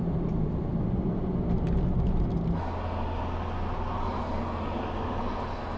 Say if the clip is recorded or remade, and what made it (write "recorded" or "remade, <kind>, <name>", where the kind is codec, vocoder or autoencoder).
recorded